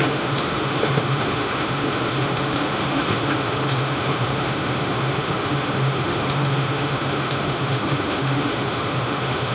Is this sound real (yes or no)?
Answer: no